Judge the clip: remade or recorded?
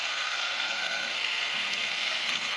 remade